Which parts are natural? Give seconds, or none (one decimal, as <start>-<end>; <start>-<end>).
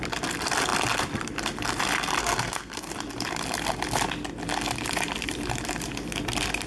0.0-2.2; 2.9-6.7